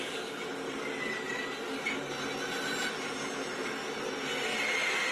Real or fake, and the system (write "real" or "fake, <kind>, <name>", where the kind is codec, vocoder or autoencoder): real